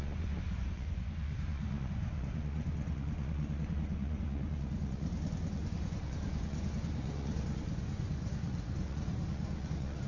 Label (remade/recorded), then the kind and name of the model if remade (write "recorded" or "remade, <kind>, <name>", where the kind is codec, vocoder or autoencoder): remade, vocoder, Vocos